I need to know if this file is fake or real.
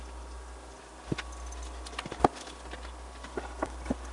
real